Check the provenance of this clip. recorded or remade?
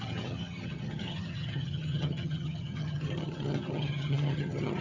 remade